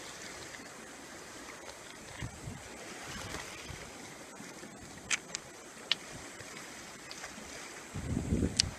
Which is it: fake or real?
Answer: real